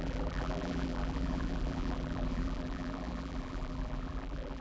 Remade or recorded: remade